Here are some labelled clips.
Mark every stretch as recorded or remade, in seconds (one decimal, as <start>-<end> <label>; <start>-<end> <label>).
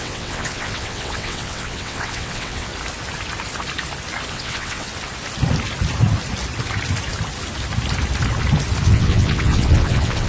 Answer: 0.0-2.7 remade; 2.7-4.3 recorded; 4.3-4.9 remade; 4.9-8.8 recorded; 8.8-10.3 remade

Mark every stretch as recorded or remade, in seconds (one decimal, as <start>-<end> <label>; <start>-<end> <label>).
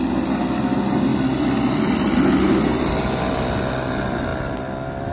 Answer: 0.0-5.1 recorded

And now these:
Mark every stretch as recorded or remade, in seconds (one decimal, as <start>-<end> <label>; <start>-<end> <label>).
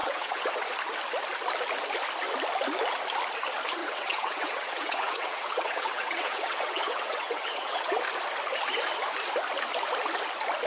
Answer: 0.0-0.6 remade; 0.6-3.8 recorded; 3.8-8.0 remade; 8.0-10.7 recorded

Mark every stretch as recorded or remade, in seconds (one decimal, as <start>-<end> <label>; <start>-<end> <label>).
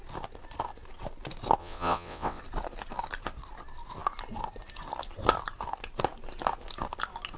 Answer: 0.0-1.6 recorded; 1.6-2.4 remade; 2.4-7.4 recorded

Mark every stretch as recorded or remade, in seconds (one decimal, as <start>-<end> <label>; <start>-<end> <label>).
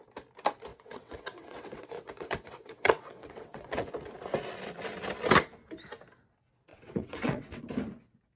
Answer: 0.0-0.7 recorded; 0.7-3.9 remade; 3.9-6.7 recorded; 6.7-7.6 remade; 7.6-8.4 recorded